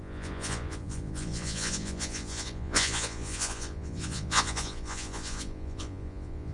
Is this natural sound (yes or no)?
no